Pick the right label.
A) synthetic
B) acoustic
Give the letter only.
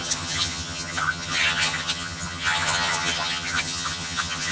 A